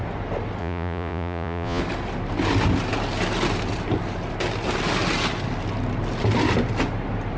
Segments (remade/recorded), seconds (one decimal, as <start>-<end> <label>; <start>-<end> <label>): 0.0-0.6 recorded; 0.6-1.8 remade; 1.8-7.4 recorded